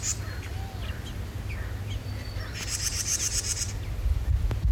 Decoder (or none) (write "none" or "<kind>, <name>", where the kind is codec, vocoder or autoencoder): none